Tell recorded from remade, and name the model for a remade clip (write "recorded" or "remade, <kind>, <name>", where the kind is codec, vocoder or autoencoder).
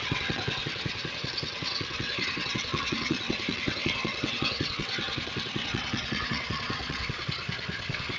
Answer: remade, vocoder, WaveNeXt